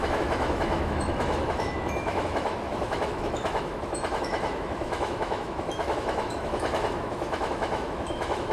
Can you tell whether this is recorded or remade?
remade